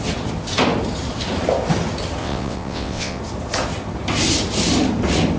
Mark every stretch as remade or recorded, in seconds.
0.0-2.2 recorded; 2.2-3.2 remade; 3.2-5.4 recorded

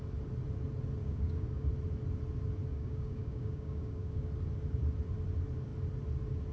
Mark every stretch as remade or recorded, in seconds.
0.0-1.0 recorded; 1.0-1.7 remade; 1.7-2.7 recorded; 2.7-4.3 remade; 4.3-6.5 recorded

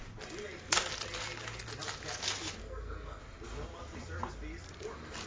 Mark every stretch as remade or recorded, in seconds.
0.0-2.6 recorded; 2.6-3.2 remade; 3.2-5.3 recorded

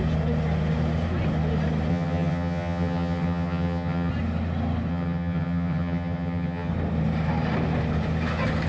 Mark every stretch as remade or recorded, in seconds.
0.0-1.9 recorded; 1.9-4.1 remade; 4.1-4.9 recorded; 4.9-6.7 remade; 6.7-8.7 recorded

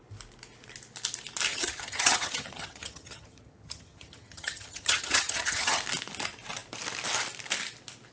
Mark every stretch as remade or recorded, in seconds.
0.0-1.5 recorded; 1.5-5.8 remade; 5.8-8.1 recorded

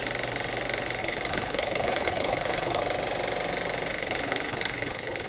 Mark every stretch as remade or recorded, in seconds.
0.0-1.0 recorded; 1.0-2.8 remade; 2.8-3.9 recorded; 3.9-5.3 remade

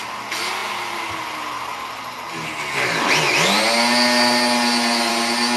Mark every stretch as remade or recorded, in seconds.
0.0-5.6 recorded